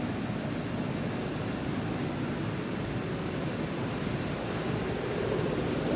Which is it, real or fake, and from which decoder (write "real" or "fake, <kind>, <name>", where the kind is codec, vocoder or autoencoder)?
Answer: real